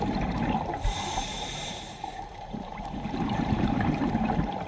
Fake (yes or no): yes